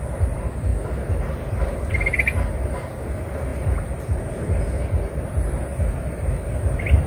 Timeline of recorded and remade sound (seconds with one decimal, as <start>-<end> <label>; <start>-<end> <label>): 0.0-3.5 recorded; 3.5-4.2 remade; 4.2-5.7 recorded; 5.7-6.5 remade; 6.5-7.1 recorded